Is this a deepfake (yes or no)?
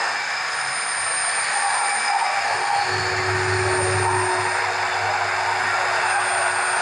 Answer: no